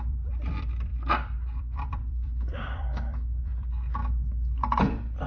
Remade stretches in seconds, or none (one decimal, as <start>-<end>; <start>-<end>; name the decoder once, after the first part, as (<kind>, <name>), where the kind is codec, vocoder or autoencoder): 0.0-4.0 (vocoder, BigVGAN v2); 4.8-5.3